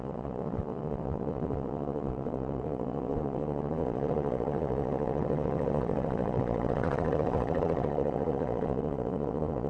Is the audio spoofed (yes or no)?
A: yes